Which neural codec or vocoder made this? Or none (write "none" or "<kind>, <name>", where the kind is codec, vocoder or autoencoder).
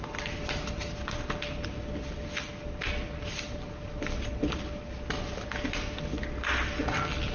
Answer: none